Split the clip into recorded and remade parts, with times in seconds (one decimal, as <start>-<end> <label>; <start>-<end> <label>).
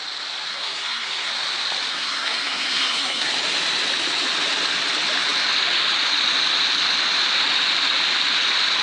0.0-0.5 recorded; 0.5-1.3 remade; 1.3-1.9 recorded; 1.9-3.3 remade; 3.3-8.8 recorded